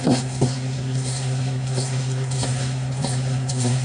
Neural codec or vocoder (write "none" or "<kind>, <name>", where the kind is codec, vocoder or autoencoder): codec, SNAC